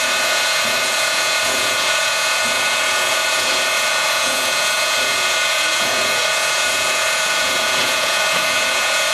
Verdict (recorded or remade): remade